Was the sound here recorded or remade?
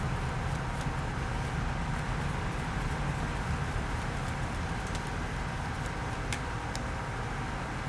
recorded